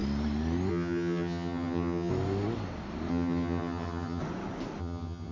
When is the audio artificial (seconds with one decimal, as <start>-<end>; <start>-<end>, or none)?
0.7-2.1; 3.1-4.2; 4.8-5.3